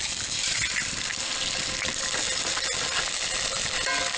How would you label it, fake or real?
real